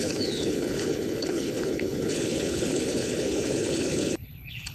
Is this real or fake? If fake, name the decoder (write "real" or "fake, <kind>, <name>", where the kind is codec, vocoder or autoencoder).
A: fake, codec, HILCodec